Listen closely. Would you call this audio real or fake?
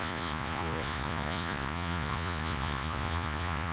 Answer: fake